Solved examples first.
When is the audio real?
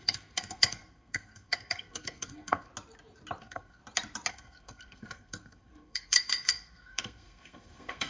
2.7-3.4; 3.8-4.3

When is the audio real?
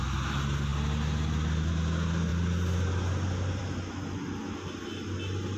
0.0-5.6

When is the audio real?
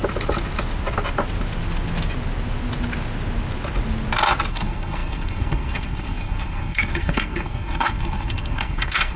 0.0-4.5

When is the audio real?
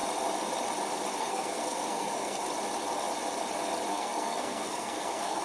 0.0-1.2; 2.4-3.9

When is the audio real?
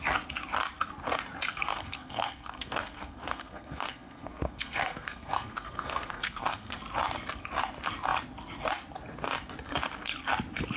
0.0-1.5; 6.8-10.8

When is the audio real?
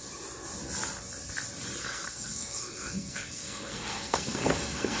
0.0-1.8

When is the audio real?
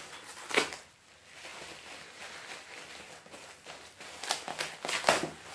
0.0-5.5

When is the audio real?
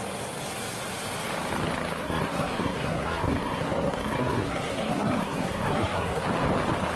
0.0-2.0; 6.2-7.0